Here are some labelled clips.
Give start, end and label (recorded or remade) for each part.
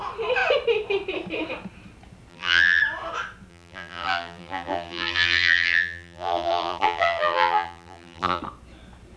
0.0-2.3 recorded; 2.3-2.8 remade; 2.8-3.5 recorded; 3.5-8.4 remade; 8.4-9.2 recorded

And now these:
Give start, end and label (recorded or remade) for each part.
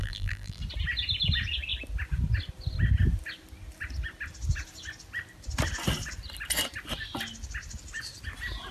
0.0-0.6 remade; 0.6-8.7 recorded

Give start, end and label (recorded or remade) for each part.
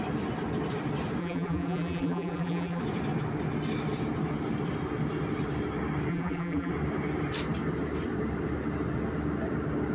0.0-1.2 recorded; 1.2-2.8 remade; 2.8-6.1 recorded; 6.1-6.7 remade; 6.7-9.9 recorded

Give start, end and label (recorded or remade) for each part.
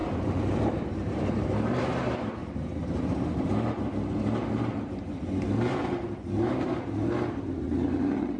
0.0-1.8 remade; 1.8-8.4 recorded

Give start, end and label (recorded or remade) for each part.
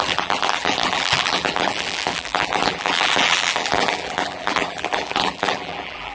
0.0-6.1 remade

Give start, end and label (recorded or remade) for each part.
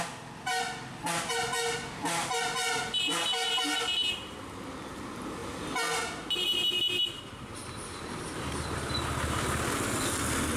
0.0-10.6 recorded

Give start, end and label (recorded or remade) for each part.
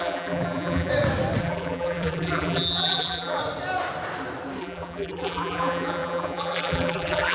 0.0-0.9 remade; 0.9-1.4 recorded; 1.4-3.4 remade; 3.4-4.6 recorded; 4.6-7.3 remade